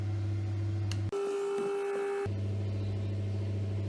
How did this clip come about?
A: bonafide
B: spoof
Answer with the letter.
A